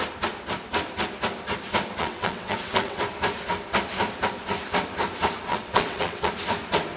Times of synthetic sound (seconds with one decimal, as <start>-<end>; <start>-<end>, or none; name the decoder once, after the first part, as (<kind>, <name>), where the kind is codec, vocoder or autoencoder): 2.0-3.0 (vocoder, WaveNeXt); 5.5-6.3